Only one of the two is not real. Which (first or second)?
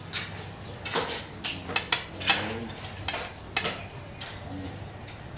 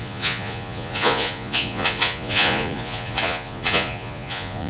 second